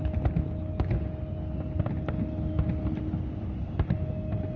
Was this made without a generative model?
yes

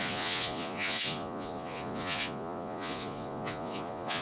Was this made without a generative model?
no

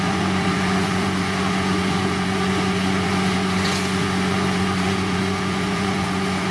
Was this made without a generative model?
no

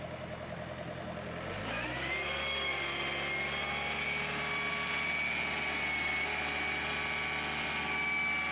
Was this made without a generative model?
yes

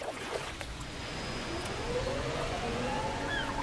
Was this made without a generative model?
no